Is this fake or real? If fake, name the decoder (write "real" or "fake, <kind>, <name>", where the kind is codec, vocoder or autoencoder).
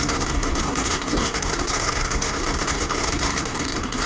fake, codec, SNAC